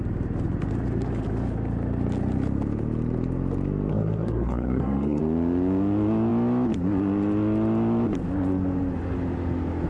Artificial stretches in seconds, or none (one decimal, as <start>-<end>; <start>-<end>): 3.9-5.2